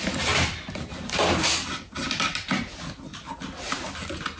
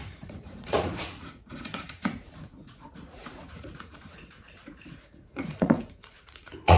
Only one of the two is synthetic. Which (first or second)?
second